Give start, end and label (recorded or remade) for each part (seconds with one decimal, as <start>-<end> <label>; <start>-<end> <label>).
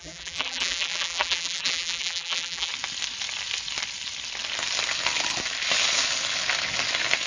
0.0-2.7 remade; 2.7-7.3 recorded